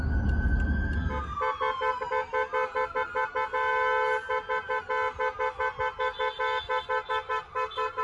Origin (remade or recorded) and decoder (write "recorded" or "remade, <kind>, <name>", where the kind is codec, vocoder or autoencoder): recorded